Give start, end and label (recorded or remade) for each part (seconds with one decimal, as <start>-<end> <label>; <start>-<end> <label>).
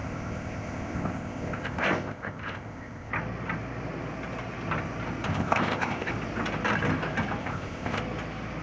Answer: 0.0-3.1 remade; 3.1-5.3 recorded; 5.3-6.1 remade; 6.1-7.4 recorded; 7.4-8.0 remade; 8.0-8.6 recorded